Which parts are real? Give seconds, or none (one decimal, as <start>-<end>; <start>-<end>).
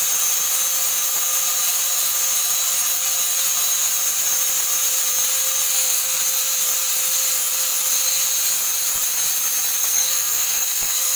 0.0-5.7; 6.2-9.8